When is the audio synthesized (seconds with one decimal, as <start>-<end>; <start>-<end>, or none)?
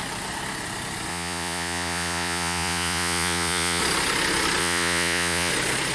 1.1-3.8; 4.6-5.5